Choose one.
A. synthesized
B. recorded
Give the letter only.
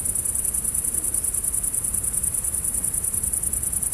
B